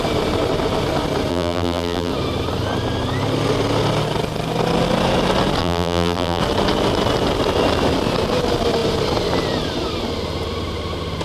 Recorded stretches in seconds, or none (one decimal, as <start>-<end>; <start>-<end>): 0.0-1.3; 2.1-5.6; 6.4-11.2